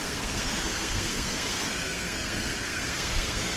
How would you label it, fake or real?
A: fake